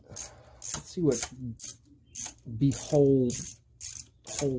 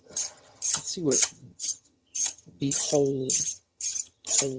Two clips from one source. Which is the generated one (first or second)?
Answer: second